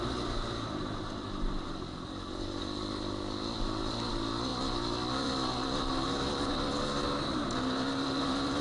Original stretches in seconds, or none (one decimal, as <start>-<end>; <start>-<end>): 0.0-2.6; 4.1-4.5; 5.3-8.6